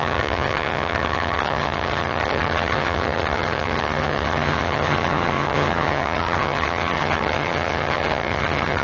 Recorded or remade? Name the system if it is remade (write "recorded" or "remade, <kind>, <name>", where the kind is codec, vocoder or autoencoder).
remade, vocoder, HiFi-GAN